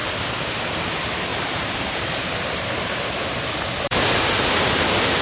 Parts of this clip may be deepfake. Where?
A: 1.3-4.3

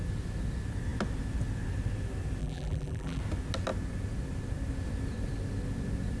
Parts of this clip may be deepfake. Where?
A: 2.4-3.2

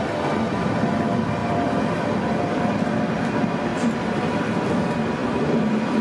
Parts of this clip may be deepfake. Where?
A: 1.4-2.6; 3.7-4.2; 5.2-6.0